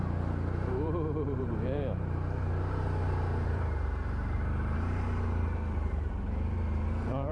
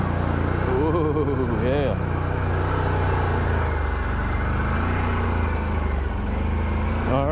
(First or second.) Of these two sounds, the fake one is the first